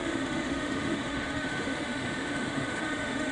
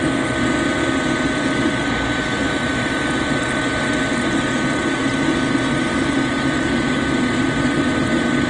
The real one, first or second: second